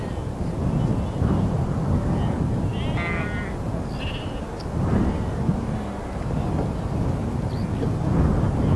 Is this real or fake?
real